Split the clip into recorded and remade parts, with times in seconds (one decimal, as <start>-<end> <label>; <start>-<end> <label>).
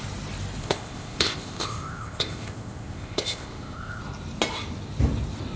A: 0.0-0.6 recorded; 0.6-4.0 remade; 4.0-5.6 recorded